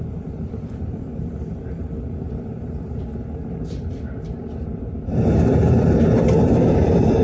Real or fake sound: fake